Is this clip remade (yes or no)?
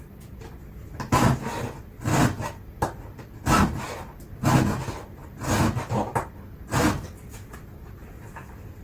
no